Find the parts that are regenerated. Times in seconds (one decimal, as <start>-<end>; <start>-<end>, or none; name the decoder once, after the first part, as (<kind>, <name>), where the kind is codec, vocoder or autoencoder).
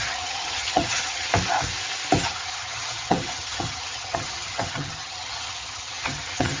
0.0-1.3 (vocoder, HiFi-GAN); 2.2-6.6